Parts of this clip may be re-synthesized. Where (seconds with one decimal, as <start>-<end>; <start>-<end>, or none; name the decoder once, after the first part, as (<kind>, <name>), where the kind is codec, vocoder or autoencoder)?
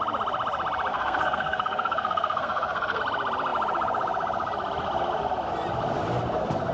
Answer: 0.9-3.0 (codec, SNAC)